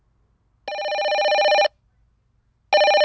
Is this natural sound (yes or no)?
yes